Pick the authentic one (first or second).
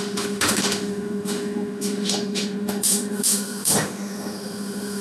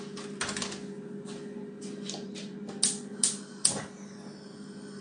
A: second